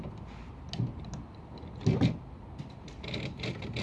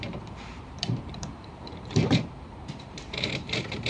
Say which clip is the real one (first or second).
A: first